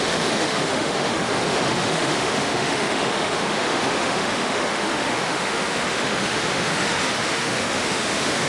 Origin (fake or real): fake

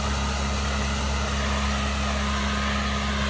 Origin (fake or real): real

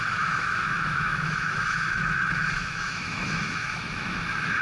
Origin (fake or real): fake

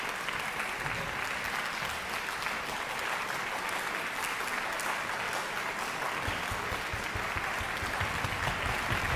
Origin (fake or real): real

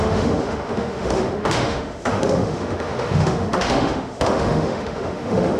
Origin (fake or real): fake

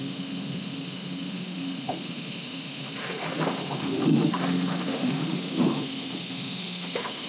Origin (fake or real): fake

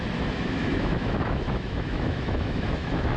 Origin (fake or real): fake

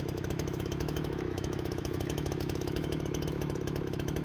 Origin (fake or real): fake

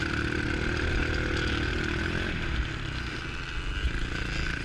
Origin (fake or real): real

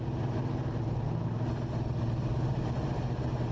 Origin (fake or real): real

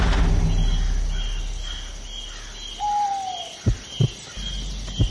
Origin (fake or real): real